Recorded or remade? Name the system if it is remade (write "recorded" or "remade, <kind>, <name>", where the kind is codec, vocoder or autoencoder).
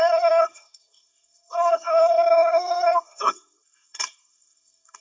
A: remade, codec, SNAC